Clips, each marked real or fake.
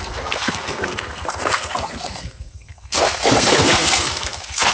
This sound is fake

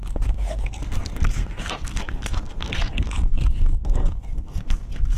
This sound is fake